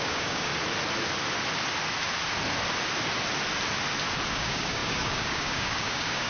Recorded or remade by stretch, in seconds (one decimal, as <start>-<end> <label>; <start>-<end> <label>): 0.0-0.5 remade; 0.5-4.3 recorded; 4.3-6.3 remade

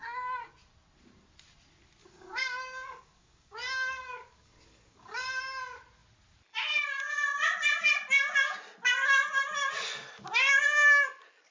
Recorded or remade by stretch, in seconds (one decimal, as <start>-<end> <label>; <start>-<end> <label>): 0.0-2.0 recorded; 2.0-5.4 remade; 5.4-11.5 recorded